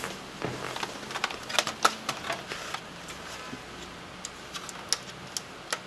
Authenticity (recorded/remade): recorded